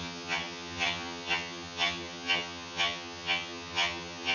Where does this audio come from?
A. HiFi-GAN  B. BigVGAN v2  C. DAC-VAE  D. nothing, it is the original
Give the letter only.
A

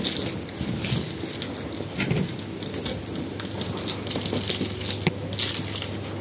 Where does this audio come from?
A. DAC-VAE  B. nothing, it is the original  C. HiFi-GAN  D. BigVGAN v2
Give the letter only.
B